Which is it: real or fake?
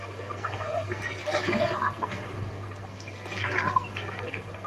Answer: fake